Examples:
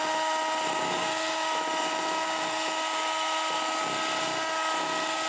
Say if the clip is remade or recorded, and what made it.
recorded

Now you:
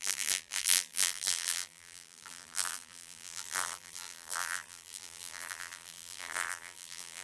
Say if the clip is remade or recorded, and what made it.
remade, vocoder, BigVGAN v2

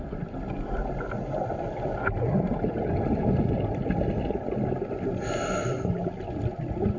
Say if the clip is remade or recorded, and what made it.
recorded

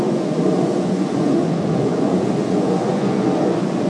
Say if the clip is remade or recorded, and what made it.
remade, vocoder, Vocos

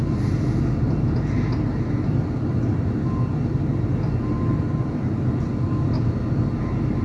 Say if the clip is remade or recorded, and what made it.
recorded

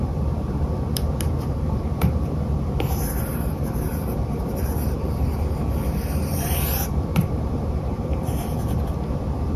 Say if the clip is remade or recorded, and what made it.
remade, vocoder, BigVGAN v2